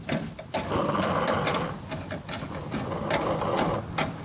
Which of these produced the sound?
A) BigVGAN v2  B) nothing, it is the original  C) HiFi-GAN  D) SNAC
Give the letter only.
B